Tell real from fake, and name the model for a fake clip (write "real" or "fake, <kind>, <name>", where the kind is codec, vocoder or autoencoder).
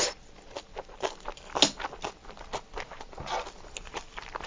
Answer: real